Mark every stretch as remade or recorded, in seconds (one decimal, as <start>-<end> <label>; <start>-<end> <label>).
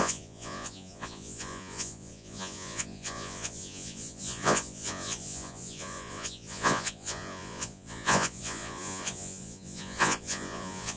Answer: 0.0-11.0 remade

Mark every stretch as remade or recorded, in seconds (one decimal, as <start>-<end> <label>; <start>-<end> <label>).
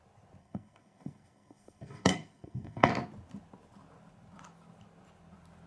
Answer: 0.0-0.4 recorded; 0.4-2.9 remade; 2.9-5.7 recorded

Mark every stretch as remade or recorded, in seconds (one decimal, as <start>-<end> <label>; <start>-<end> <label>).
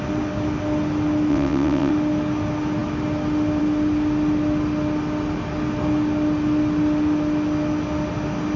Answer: 0.0-1.3 recorded; 1.3-1.9 remade; 1.9-8.6 recorded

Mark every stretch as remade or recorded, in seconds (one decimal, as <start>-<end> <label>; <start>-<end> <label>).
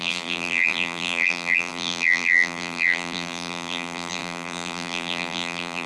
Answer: 0.0-5.9 remade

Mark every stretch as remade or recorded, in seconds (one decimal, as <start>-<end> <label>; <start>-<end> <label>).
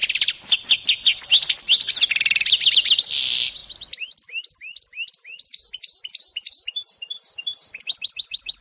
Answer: 0.0-3.6 recorded; 3.6-4.1 remade; 4.1-6.3 recorded; 6.3-7.0 remade; 7.0-8.6 recorded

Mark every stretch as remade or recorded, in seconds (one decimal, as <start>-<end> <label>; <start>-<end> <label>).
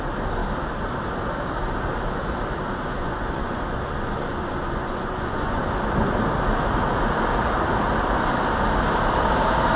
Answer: 0.0-3.0 recorded; 3.0-5.6 remade; 5.6-9.8 recorded